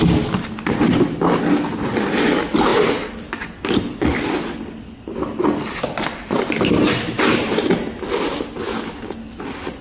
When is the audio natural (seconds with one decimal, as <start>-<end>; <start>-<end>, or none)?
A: 0.0-9.8